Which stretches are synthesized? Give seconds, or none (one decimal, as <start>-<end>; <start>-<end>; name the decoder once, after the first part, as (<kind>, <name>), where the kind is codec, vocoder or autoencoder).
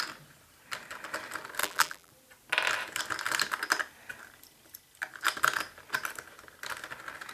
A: 1.6-2.1 (vocoder, BigVGAN v2)